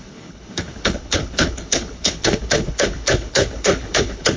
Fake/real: fake